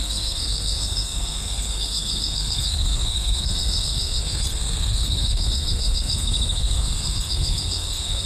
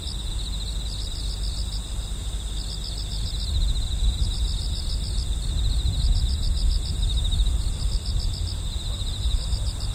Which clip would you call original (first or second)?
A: second